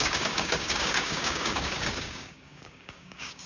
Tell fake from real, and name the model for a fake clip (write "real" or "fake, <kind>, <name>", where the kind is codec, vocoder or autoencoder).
fake, codec, DAC